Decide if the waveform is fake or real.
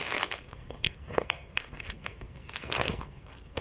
fake